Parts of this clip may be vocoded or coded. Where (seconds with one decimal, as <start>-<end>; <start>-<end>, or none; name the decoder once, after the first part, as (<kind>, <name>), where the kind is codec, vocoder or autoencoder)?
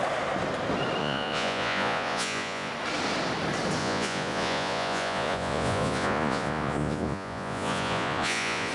1.0-2.7 (vocoder, Vocos); 3.8-8.7